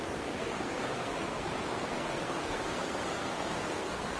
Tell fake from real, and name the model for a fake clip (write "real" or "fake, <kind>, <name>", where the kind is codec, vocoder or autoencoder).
fake, codec, SNAC